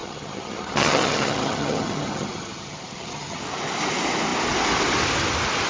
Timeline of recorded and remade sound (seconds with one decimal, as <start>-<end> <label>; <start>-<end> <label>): 0.0-3.4 remade; 3.4-5.7 recorded